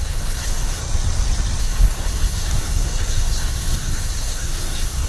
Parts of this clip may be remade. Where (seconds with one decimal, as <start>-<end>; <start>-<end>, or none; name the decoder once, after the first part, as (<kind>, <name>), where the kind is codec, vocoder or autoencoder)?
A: 0.0-0.8 (codec, SNAC); 1.6-5.1